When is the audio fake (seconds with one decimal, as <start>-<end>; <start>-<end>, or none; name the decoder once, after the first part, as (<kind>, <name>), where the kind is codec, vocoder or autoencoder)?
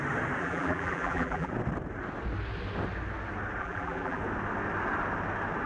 0.4-1.5 (vocoder, BigVGAN v2); 3.6-4.2